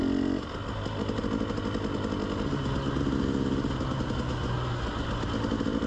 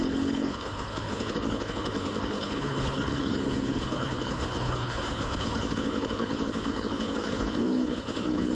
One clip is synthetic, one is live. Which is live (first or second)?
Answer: first